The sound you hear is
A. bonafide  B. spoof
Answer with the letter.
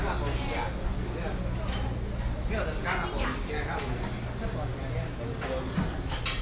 A